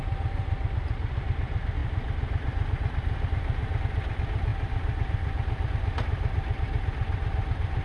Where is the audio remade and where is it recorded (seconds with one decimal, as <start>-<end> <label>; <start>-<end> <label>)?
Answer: 0.0-4.5 recorded; 4.5-5.7 remade; 5.7-7.8 recorded